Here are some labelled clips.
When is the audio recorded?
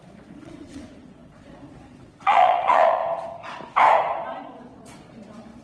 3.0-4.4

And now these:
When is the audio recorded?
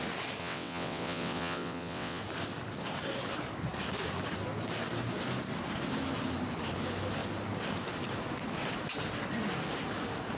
0.0-0.4; 2.2-10.4